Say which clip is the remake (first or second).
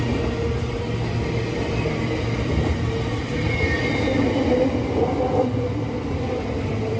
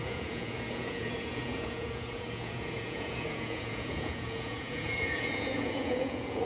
second